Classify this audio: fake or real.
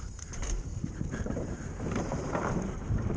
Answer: fake